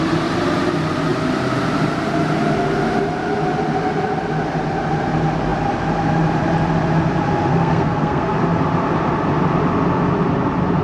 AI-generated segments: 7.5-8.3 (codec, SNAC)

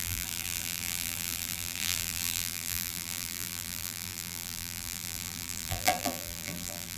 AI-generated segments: 0.0-7.0 (vocoder, BigVGAN v2)

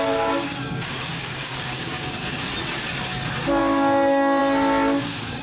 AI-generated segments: 0.0-2.5 (codec, DAC); 3.6-4.4; 5.0-5.4

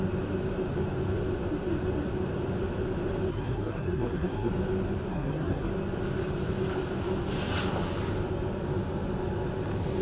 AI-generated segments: 3.3-4.5 (codec, SNAC); 5.1-5.7

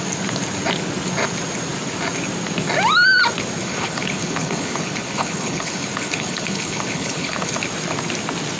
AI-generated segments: 3.6-7.5 (codec, HILCodec)

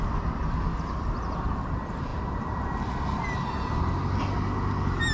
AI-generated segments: none

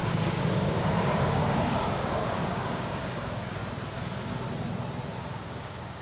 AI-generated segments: 0.0-3.6 (codec, DAC); 5.2-6.0

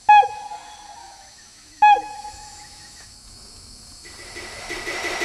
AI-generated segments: 1.0-4.1 (autoencoder, DAC-VAE)